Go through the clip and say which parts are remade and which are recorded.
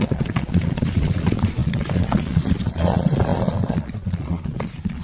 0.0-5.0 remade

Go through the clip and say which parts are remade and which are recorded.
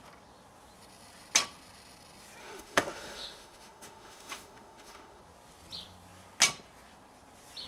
0.0-2.4 recorded; 2.4-5.2 remade; 5.2-7.7 recorded